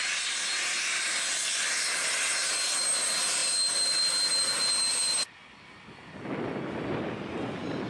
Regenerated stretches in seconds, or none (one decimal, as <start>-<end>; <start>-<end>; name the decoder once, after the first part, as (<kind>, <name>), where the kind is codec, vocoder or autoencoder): none